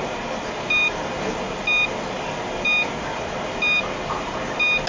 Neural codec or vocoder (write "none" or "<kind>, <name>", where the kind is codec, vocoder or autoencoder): none